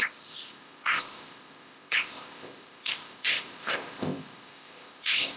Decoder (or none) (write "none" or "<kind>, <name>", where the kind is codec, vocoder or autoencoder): codec, ZipCodec